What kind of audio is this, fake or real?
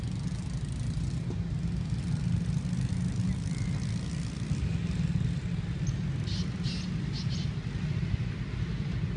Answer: real